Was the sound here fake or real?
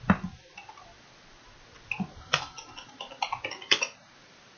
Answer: real